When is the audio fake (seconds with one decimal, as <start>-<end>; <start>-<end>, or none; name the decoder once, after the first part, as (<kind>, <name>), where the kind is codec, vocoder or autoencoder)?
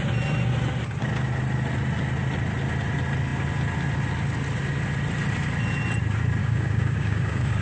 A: 6.4-7.6 (codec, DAC)